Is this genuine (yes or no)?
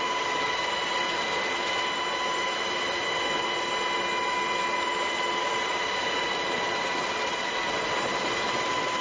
yes